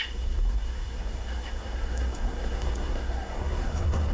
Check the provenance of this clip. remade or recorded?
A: remade